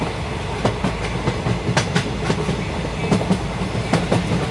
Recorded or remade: recorded